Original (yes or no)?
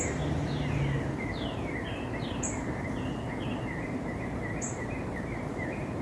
no